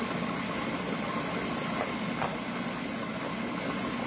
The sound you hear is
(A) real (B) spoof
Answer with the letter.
A